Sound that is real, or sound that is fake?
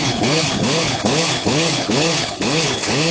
fake